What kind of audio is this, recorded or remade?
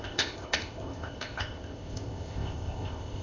remade